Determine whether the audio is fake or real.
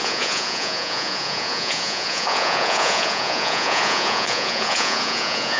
fake